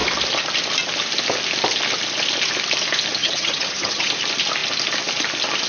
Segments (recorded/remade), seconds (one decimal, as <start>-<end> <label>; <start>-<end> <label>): 0.0-3.2 recorded; 3.2-4.1 remade; 4.1-5.7 recorded